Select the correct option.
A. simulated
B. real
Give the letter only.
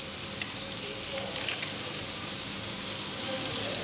B